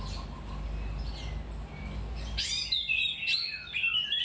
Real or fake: real